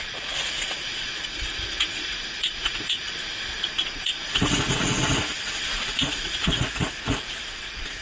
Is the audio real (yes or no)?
no